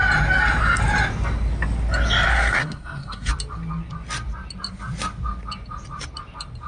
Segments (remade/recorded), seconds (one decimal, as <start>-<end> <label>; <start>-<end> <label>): 0.0-2.3 recorded; 2.3-3.3 remade; 3.3-6.7 recorded